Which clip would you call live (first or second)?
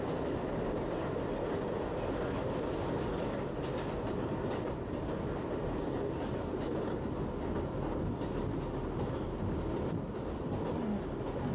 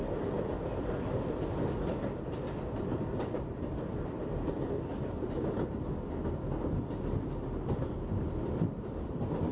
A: first